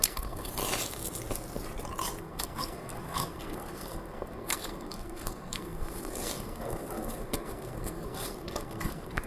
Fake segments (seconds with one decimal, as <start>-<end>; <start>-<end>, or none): 0.0-0.6; 2.2-9.3